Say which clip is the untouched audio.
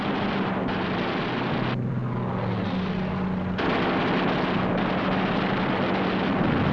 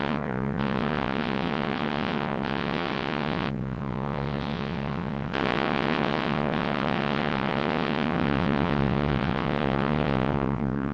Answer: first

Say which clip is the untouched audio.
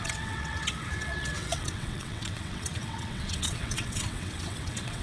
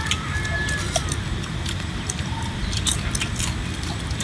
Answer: second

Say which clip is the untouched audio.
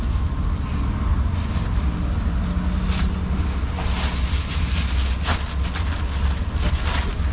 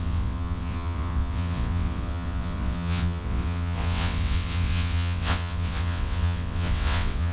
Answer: first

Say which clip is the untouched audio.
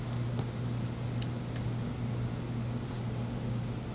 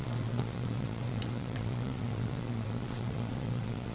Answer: first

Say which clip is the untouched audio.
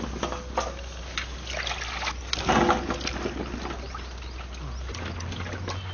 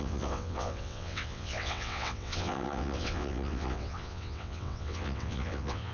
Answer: first